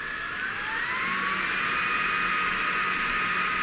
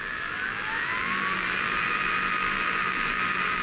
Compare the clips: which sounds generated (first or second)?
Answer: second